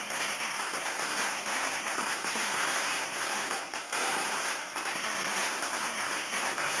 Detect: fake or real fake